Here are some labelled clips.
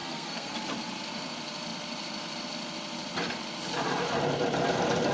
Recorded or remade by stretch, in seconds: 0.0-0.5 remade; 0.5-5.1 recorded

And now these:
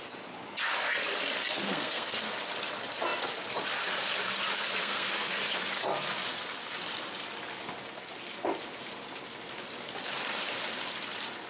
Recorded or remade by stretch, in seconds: 0.0-1.6 recorded; 1.6-2.2 remade; 2.2-4.8 recorded; 4.8-5.3 remade; 5.3-11.5 recorded

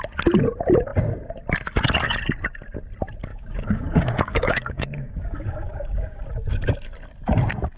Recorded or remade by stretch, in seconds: 0.0-3.3 recorded; 3.3-6.2 remade; 6.2-7.8 recorded